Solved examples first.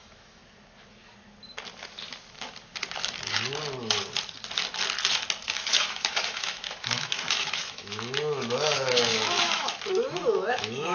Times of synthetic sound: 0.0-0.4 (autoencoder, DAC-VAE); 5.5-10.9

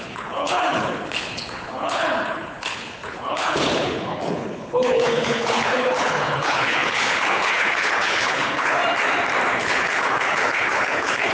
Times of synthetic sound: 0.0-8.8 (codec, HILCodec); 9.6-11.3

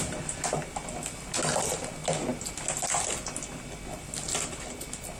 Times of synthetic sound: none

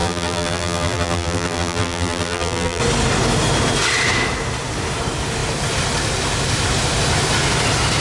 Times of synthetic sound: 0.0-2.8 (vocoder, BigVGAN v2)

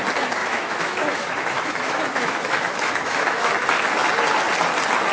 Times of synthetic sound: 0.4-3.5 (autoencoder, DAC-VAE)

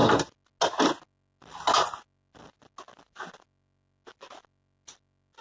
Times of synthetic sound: none